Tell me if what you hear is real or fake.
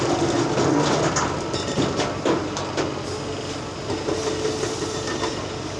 real